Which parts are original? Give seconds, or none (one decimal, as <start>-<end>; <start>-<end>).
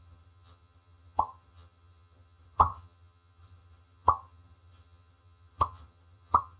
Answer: none